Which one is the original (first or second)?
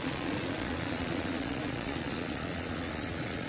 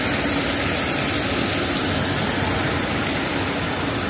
second